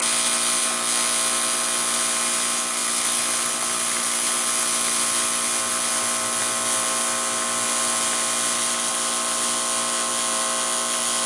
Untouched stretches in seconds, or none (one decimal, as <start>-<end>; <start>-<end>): 0.0-11.3